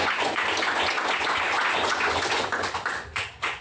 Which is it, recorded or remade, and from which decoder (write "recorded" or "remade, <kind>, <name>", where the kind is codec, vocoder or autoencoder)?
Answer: remade, vocoder, Vocos